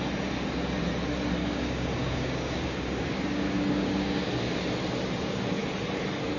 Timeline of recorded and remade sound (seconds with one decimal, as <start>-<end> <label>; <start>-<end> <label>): 0.0-1.4 recorded; 1.4-4.3 remade; 4.3-6.4 recorded